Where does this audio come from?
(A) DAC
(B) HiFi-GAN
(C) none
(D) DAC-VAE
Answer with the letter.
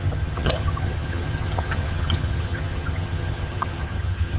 B